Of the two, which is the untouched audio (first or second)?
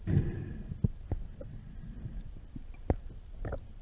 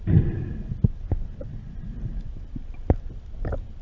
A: second